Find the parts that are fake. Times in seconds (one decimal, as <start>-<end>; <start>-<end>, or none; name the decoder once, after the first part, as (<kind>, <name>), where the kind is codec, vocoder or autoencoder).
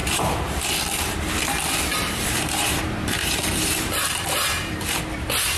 0.0-0.6 (vocoder, BigVGAN v2); 1.9-5.0